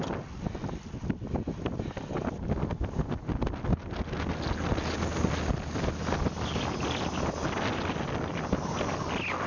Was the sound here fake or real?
real